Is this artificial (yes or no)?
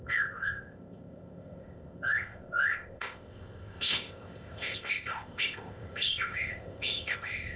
yes